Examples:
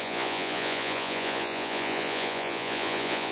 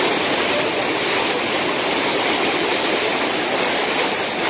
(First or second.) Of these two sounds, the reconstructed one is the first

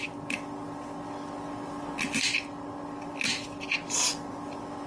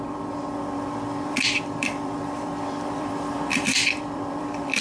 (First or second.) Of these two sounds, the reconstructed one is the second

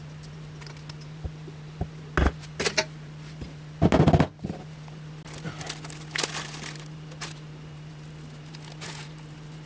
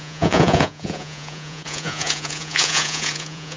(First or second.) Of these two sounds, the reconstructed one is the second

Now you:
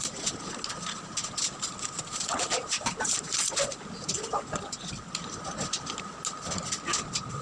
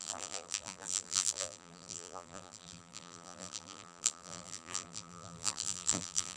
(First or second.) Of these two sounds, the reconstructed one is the second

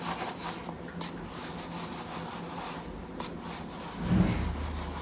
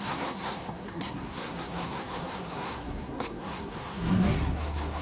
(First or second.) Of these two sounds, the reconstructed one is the second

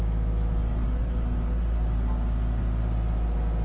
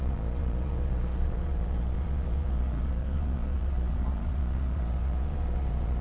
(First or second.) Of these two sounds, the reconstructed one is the second